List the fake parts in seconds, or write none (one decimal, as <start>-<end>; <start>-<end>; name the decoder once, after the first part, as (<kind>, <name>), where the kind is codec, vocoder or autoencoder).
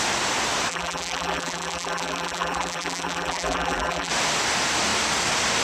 0.7-4.1 (vocoder, BigVGAN v2)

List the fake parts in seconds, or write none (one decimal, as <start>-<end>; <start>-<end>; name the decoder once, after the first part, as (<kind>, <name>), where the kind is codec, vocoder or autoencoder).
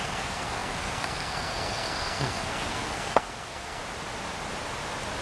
0.0-3.8 (codec, SNAC)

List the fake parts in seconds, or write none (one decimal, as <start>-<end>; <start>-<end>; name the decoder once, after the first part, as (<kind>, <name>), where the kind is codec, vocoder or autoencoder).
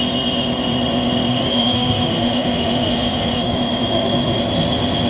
1.3-4.4 (autoencoder, DAC-VAE)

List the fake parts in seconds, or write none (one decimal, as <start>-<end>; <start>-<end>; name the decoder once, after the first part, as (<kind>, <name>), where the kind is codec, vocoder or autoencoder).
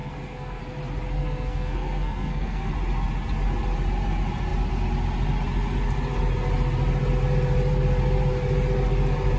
0.0-0.6 (codec, SNAC); 1.2-2.7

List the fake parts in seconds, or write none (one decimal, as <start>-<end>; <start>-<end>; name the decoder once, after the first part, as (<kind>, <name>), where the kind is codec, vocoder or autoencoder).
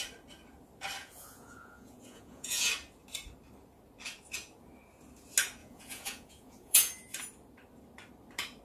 1.0-2.7 (vocoder, Vocos); 5.6-6.9